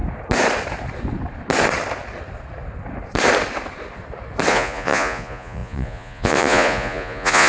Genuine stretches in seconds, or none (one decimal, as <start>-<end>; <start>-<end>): 0.0-4.5